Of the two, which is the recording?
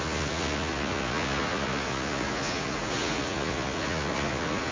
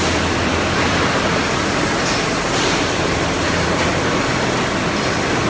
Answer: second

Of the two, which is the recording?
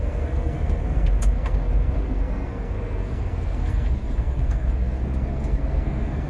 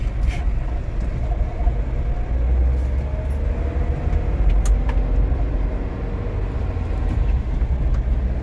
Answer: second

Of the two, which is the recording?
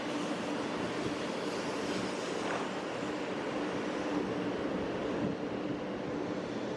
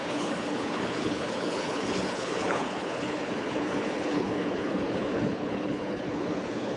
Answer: first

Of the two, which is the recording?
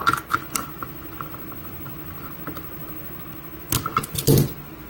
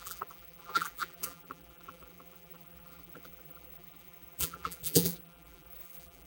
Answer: first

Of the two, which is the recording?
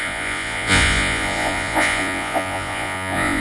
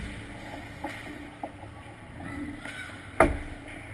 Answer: second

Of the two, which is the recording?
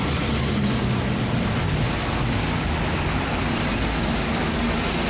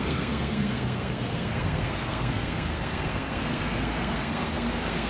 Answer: first